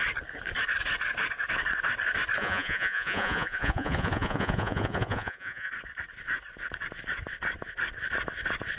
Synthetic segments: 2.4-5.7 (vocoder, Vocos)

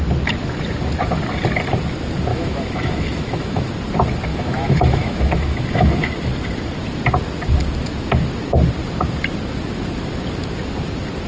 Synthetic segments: 2.3-3.7 (autoencoder, DAC-VAE); 4.3-6.1

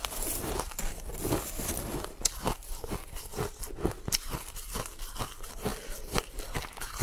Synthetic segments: 0.0-2.3 (vocoder, BigVGAN v2); 3.3-5.1; 5.7-6.6